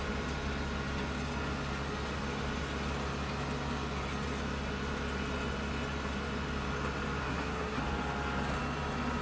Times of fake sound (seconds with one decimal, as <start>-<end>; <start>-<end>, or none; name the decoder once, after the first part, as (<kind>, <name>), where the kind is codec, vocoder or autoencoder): 7.2-7.8 (codec, SNAC)